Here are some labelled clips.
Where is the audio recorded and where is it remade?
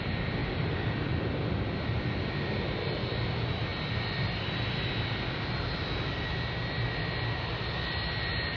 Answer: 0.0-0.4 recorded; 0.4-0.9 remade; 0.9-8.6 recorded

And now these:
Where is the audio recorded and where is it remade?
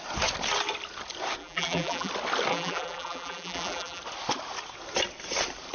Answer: 0.0-1.4 recorded; 1.4-2.1 remade; 2.1-2.5 recorded; 2.5-4.0 remade; 4.0-5.7 recorded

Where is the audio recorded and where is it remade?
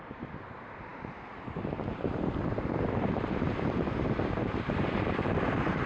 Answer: 0.0-5.9 remade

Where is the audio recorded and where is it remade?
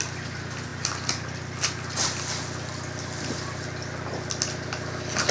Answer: 0.0-5.3 recorded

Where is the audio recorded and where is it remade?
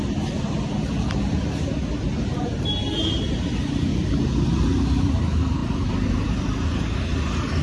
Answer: 0.0-3.9 remade; 3.9-4.6 recorded; 4.6-7.6 remade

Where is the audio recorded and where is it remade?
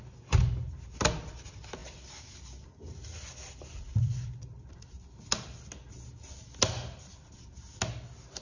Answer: 0.0-1.8 recorded; 1.8-5.7 remade; 5.7-8.4 recorded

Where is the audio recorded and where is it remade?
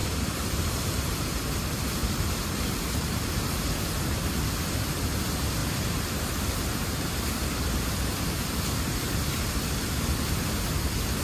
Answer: 0.0-1.3 remade; 1.3-2.0 recorded; 2.0-4.2 remade; 4.2-5.6 recorded; 5.6-8.6 remade; 8.6-11.2 recorded